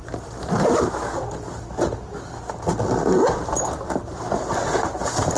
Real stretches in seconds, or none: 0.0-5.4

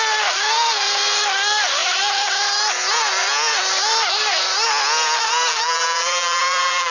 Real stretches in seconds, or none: 0.0-5.5

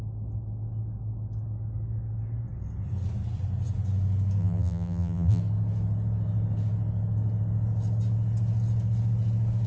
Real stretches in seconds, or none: 0.0-4.4; 5.4-9.7

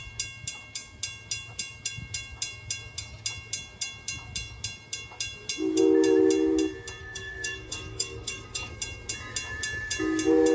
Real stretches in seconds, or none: 0.0-7.0; 8.8-10.5